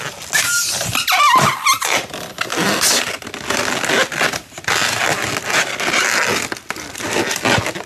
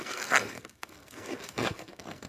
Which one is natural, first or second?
first